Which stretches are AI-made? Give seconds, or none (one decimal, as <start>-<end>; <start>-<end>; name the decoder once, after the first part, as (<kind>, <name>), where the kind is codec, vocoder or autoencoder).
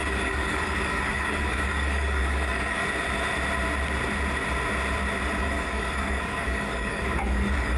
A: 0.0-2.8 (codec, DAC); 5.4-7.8